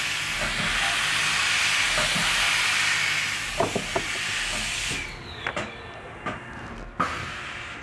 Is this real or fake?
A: real